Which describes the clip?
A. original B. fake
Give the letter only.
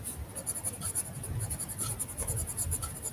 A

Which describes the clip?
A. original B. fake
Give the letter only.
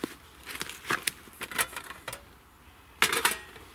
A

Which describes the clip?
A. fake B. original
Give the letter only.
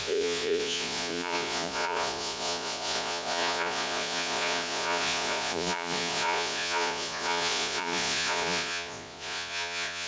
A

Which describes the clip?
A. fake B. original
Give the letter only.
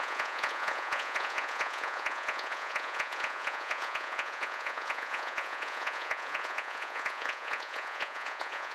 A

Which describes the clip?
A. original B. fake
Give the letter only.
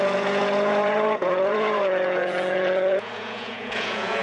B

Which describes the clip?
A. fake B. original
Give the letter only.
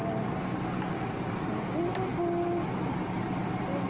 B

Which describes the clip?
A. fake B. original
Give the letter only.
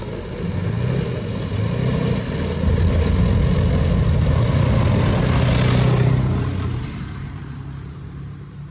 B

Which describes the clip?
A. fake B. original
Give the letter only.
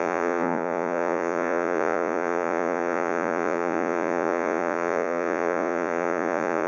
A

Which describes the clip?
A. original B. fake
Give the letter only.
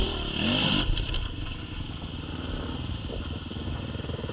A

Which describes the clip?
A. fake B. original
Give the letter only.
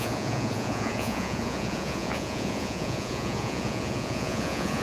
A